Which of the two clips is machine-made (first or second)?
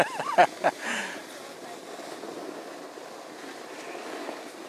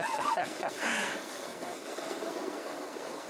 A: second